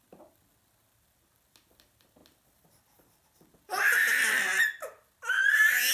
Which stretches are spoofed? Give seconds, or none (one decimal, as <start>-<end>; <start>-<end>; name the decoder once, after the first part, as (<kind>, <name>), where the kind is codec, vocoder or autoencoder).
none